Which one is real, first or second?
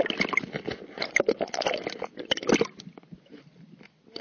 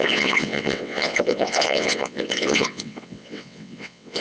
first